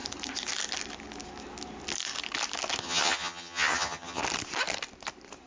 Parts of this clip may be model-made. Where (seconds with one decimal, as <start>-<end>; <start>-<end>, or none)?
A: 2.8-4.2